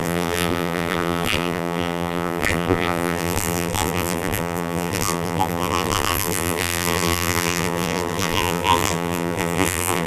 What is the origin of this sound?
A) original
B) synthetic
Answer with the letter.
B